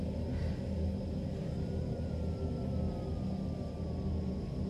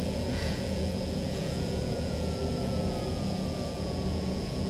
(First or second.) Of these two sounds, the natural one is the first